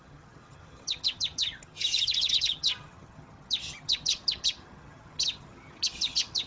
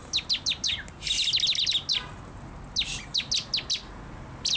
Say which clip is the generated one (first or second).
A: first